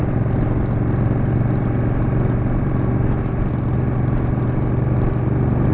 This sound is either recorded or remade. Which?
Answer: recorded